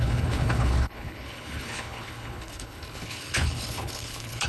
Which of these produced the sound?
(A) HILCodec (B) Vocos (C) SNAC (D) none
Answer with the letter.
A